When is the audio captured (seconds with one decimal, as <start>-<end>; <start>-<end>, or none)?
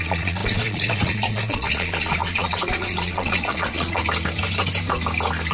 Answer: 4.0-5.5